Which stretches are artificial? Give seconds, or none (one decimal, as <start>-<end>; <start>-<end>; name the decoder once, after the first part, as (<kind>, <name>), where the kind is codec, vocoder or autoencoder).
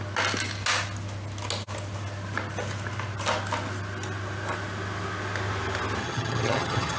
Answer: 6.0-7.0 (vocoder, HiFi-GAN)